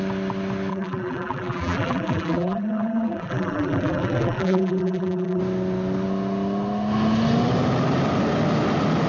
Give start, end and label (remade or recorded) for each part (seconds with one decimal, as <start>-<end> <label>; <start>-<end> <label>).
0.0-0.7 recorded; 0.7-5.4 remade; 5.4-9.1 recorded

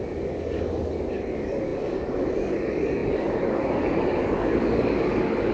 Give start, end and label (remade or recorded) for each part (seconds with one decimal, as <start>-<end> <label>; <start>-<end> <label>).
0.0-5.5 remade

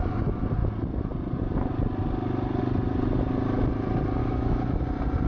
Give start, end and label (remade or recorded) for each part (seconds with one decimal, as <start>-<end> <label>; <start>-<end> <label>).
0.0-4.2 recorded; 4.2-4.7 remade; 4.7-5.3 recorded